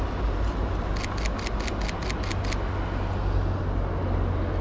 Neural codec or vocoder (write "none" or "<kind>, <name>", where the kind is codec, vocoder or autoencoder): none